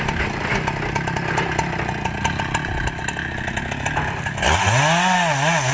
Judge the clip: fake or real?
real